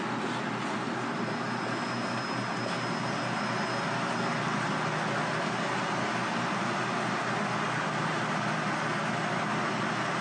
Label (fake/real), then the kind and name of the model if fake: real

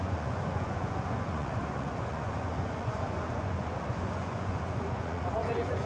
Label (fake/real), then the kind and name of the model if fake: fake, vocoder, Vocos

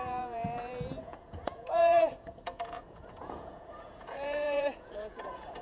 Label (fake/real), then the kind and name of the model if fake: fake, vocoder, Vocos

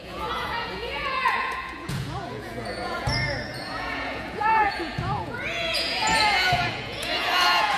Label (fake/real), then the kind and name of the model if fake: fake, vocoder, Vocos